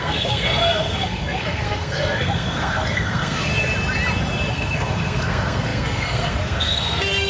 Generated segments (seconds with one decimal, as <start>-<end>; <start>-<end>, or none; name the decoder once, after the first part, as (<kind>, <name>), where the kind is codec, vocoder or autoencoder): 0.0-3.5 (codec, SNAC); 4.5-7.3